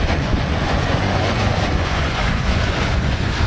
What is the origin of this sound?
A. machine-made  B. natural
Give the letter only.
A